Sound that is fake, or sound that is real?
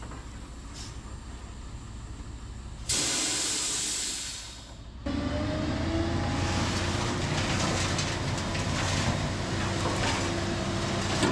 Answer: real